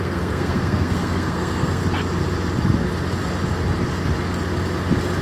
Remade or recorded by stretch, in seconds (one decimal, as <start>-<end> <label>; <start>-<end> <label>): 0.0-1.8 remade; 1.8-5.2 recorded